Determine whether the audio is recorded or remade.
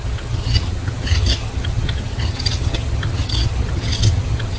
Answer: remade